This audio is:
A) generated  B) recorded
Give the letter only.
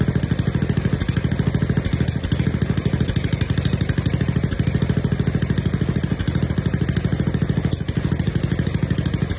B